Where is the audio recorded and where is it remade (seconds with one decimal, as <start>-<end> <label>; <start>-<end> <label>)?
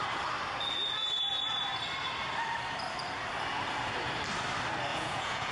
0.0-4.9 recorded; 4.9-5.5 remade